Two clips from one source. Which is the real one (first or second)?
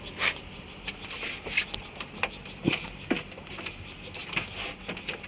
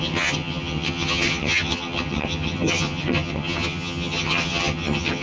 first